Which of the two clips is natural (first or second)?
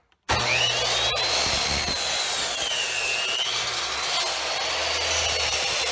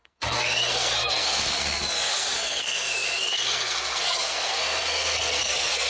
first